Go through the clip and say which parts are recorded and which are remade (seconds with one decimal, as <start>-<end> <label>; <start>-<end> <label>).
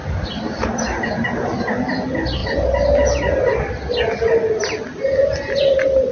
0.0-6.1 recorded